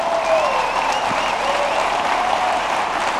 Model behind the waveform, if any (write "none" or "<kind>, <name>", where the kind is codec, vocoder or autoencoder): vocoder, BigVGAN v2